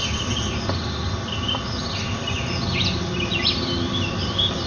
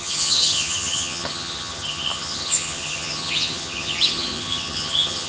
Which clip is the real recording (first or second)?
first